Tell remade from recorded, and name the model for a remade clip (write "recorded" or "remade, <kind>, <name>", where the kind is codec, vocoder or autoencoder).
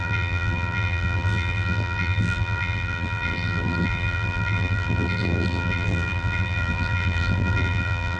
remade, vocoder, BigVGAN v2